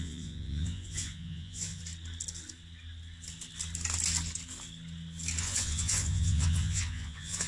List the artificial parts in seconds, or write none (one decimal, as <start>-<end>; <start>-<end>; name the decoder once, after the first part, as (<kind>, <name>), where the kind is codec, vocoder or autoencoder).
0.0-1.8 (vocoder, Vocos); 5.4-7.5

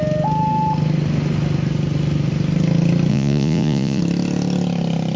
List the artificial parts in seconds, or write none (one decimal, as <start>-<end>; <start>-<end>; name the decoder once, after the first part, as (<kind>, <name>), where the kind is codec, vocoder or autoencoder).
3.1-4.0 (vocoder, Vocos)